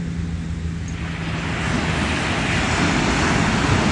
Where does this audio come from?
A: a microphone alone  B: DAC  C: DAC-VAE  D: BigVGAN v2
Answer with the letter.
A